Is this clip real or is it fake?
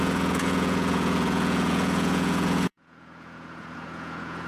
fake